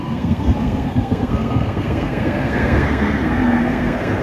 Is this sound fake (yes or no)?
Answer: yes